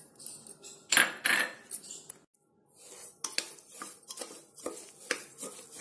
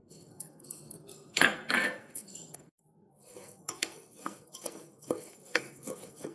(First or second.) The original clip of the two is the first